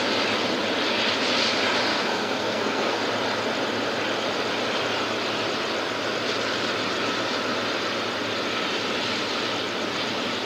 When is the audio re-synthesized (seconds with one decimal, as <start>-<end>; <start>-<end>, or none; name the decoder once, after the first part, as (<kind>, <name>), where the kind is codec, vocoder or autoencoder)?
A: 1.9-3.0 (codec, SNAC)